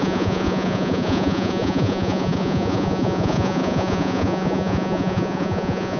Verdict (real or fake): fake